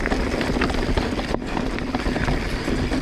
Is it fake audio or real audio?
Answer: real